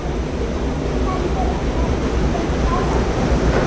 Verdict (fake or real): real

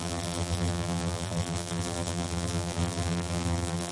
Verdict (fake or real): fake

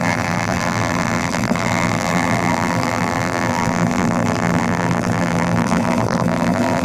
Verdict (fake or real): fake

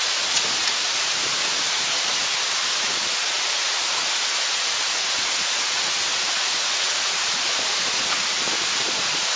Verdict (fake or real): fake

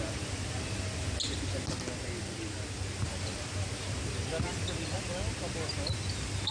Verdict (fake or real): real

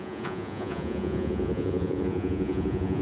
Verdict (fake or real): fake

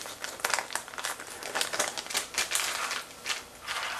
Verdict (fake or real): real